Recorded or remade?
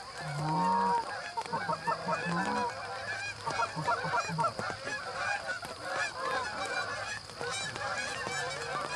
recorded